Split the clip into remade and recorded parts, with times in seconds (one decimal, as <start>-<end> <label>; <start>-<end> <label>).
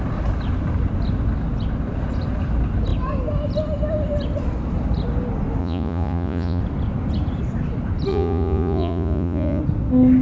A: 0.0-5.6 recorded; 5.6-6.6 remade; 6.6-8.1 recorded; 8.1-9.6 remade; 9.6-10.2 recorded